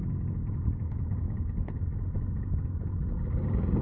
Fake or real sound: real